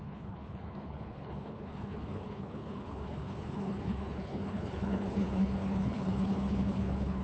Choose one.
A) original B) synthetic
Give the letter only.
B